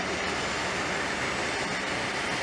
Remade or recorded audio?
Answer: recorded